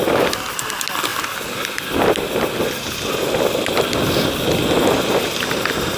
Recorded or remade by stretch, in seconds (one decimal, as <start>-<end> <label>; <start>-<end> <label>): 0.0-6.0 recorded